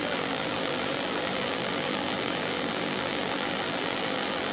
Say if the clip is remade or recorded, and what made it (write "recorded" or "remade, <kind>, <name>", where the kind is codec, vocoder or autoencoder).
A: remade, vocoder, BigVGAN v2